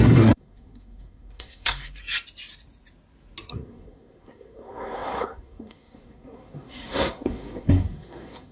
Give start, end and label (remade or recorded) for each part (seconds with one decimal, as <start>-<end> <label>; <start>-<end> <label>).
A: 0.0-2.0 remade; 2.0-3.5 recorded; 3.5-8.5 remade